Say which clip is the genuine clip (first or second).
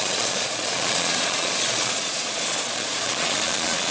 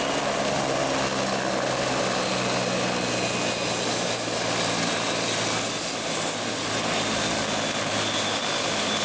second